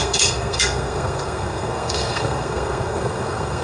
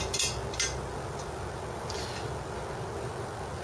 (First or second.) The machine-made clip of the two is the first